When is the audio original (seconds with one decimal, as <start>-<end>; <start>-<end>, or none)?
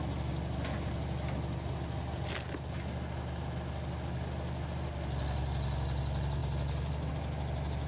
0.0-7.9